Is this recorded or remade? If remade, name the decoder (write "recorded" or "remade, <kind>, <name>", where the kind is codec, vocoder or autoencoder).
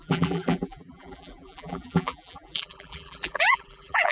remade, vocoder, BigVGAN v2